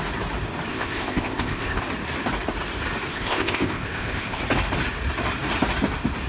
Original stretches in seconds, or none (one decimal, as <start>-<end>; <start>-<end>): 0.0-0.7; 1.8-3.1; 4.4-6.3